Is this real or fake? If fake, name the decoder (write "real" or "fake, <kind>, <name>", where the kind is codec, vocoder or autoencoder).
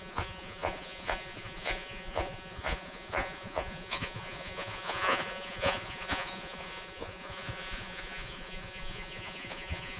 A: fake, vocoder, Vocos